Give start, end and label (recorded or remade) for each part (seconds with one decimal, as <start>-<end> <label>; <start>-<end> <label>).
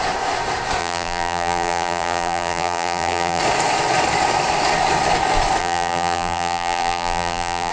0.0-0.8 recorded; 0.8-3.4 remade; 3.4-5.6 recorded; 5.6-7.7 remade